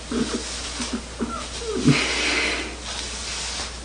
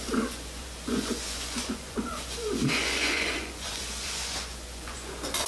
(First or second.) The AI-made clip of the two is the second